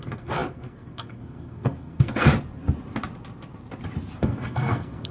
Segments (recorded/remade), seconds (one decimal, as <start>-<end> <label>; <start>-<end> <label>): 0.0-2.3 remade; 2.3-4.2 recorded; 4.2-5.1 remade

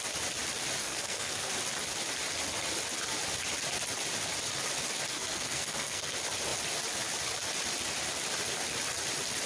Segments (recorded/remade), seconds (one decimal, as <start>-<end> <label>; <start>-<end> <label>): 0.0-0.8 recorded; 0.8-1.5 remade; 1.5-5.1 recorded; 5.1-6.1 remade; 6.1-9.5 recorded

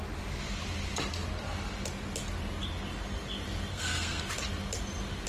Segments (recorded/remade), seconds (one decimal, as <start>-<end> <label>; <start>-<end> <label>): 0.0-3.7 recorded; 3.7-4.2 remade; 4.2-5.3 recorded

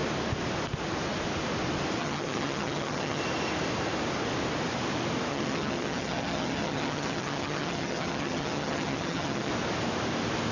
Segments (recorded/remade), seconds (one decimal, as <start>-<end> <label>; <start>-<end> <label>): 0.0-2.0 recorded; 2.0-3.2 remade; 3.2-5.3 recorded; 5.3-9.5 remade; 9.5-10.5 recorded

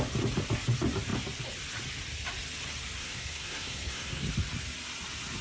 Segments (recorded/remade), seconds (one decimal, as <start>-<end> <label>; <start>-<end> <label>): 0.0-3.0 recorded; 3.0-4.3 remade; 4.3-5.4 recorded

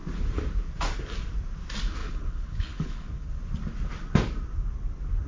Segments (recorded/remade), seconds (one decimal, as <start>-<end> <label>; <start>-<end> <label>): 0.0-2.0 recorded; 2.0-3.4 remade; 3.4-5.3 recorded

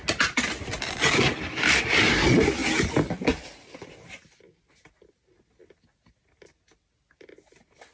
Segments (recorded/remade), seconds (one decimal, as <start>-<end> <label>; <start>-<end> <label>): 0.0-7.9 recorded

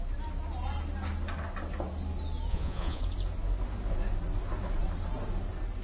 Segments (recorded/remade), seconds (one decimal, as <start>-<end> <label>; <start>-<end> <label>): 0.0-2.5 recorded; 2.5-3.0 remade; 3.0-5.8 recorded